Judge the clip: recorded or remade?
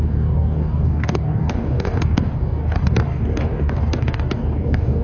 remade